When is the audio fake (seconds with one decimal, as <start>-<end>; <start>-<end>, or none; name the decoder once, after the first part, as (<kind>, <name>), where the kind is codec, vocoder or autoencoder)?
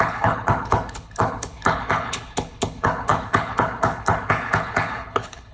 0.0-5.5 (codec, HILCodec)